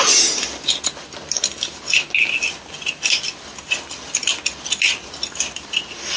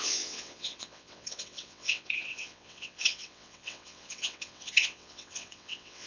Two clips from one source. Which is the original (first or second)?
first